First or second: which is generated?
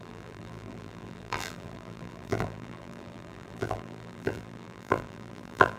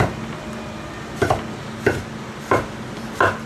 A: first